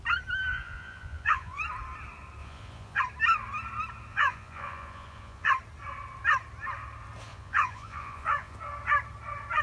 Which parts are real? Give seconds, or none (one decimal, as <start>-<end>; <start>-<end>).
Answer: 0.0-0.5; 1.6-2.4; 3.0-4.1; 5.5-7.3; 8.6-9.6